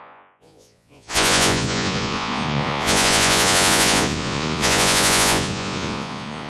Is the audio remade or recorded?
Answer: remade